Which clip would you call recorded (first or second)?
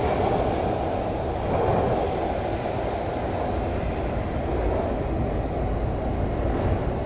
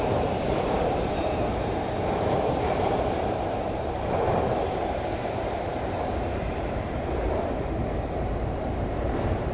first